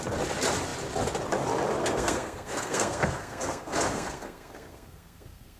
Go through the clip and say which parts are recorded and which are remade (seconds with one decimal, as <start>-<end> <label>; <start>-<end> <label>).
0.0-1.8 recorded; 1.8-5.6 remade